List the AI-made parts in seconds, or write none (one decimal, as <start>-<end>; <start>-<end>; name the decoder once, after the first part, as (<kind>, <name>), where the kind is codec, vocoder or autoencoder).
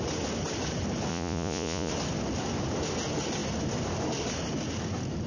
1.1-1.9 (vocoder, Vocos)